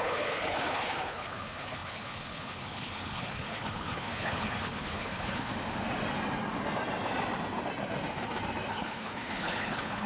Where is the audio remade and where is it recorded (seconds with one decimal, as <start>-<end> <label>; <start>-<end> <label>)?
0.0-5.5 remade; 5.5-8.7 recorded; 8.7-10.1 remade